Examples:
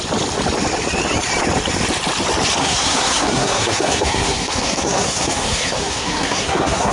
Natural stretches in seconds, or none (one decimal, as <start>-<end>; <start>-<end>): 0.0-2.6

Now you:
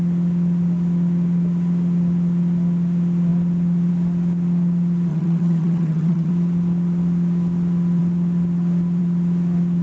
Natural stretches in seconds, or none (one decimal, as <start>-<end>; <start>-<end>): 0.0-5.1; 6.3-9.8

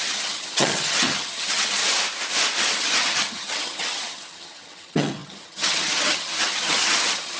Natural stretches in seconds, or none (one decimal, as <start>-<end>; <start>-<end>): 1.8-2.6